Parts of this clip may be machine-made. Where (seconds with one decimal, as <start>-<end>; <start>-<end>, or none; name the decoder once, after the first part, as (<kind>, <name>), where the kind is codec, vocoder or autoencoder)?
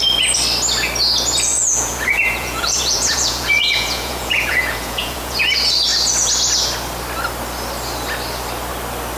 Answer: 1.5-5.4 (vocoder, Vocos)